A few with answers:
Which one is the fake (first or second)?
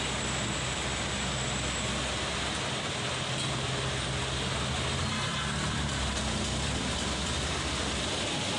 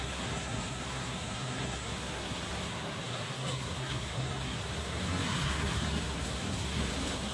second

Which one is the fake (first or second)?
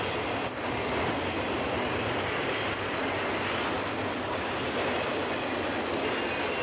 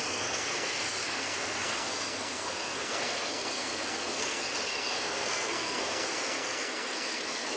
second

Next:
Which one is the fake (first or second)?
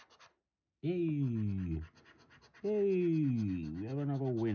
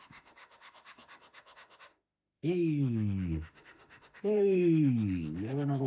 second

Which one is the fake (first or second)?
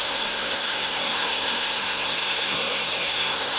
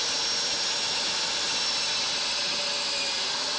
first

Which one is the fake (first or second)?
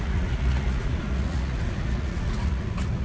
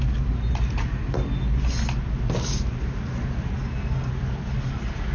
first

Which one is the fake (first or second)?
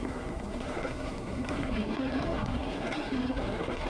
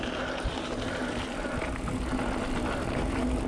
first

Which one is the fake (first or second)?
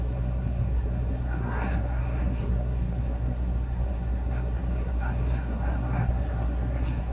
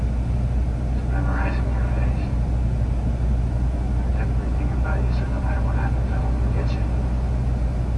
first